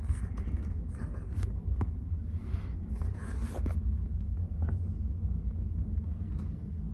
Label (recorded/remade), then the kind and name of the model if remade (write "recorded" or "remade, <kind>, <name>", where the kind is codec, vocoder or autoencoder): remade, codec, SNAC